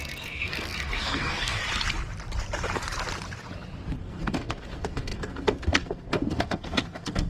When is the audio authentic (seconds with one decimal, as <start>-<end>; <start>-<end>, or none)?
1.6-4.0